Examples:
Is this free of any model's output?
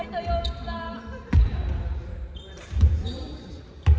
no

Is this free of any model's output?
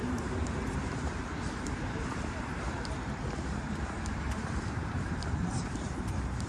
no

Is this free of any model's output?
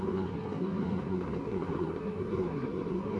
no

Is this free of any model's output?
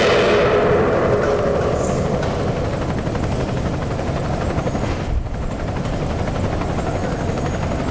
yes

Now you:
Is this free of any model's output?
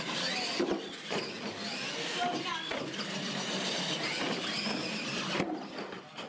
yes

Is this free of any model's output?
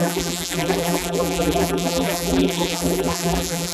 no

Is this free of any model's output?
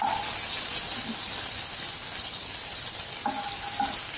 yes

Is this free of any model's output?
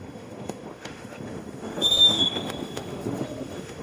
no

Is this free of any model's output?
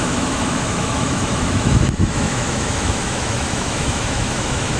no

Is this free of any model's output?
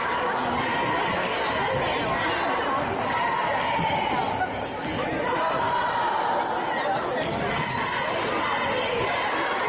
yes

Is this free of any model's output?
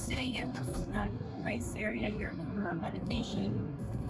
no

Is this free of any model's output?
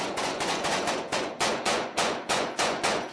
no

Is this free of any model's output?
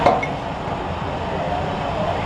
yes